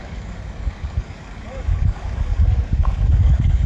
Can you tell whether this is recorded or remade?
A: remade